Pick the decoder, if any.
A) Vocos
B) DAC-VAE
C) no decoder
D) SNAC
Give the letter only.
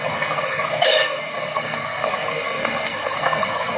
D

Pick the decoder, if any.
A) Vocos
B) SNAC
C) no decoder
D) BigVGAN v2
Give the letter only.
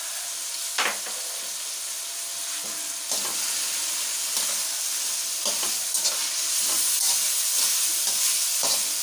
C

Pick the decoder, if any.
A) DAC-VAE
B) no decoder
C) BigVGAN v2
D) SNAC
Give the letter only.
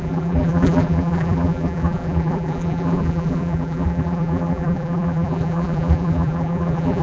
C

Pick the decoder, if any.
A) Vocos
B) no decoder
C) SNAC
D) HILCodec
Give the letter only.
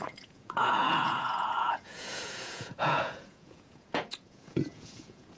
A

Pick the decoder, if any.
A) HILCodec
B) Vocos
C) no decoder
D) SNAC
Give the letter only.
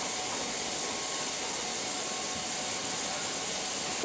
C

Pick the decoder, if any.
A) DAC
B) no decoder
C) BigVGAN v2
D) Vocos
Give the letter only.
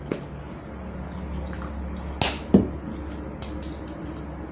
B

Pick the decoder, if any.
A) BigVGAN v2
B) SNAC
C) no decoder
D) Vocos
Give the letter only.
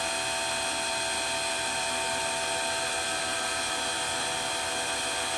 C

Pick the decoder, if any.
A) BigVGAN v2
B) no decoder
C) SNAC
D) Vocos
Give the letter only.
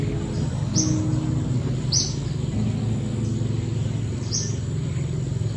B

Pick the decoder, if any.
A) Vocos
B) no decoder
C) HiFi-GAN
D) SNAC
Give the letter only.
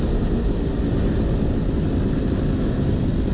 B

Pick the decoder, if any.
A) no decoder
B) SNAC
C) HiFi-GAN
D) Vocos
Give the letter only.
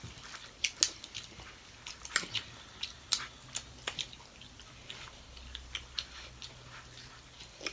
A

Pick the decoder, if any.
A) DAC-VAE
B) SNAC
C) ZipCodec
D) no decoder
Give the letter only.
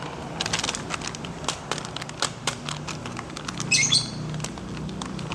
D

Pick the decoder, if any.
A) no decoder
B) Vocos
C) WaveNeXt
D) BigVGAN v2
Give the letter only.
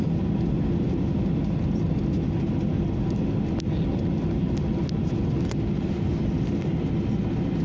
A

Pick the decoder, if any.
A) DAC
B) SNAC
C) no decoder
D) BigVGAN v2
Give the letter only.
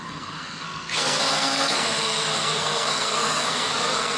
B